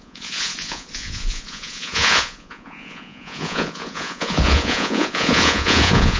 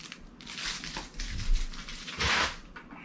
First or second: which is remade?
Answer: first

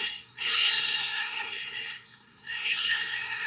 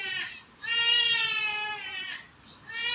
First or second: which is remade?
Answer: first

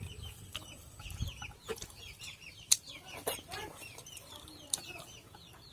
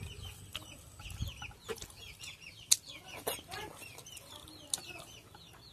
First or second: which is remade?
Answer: first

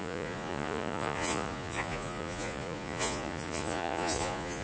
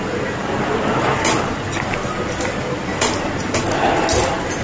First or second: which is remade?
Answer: first